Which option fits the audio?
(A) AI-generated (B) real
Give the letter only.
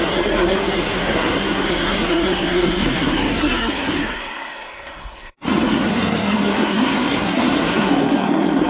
A